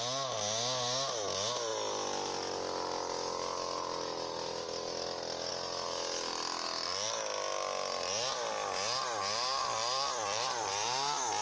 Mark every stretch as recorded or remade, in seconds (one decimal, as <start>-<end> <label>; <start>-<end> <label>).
0.0-9.6 recorded; 9.6-10.7 remade; 10.7-11.4 recorded